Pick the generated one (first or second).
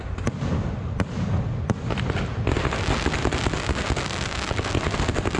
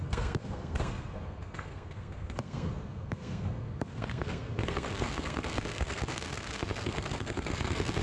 second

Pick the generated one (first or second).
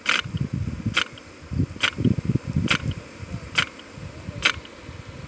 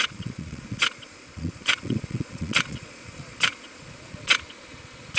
second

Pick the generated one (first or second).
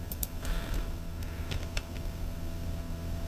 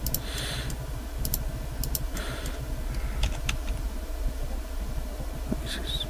first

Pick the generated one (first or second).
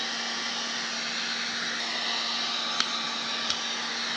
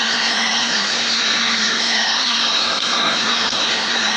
second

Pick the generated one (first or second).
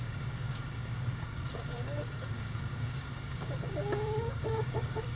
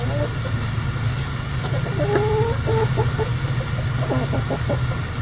first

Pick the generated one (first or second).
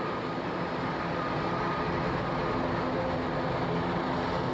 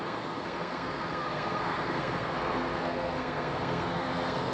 second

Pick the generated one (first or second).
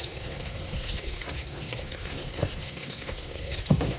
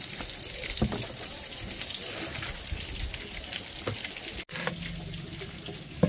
first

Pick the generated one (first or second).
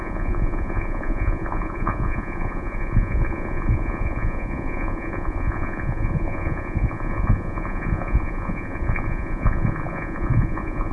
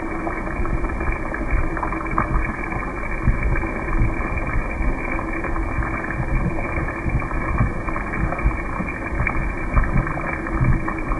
first